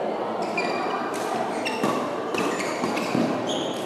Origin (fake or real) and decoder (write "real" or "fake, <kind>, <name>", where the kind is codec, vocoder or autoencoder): real